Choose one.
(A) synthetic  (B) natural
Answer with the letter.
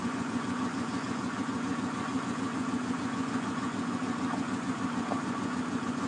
A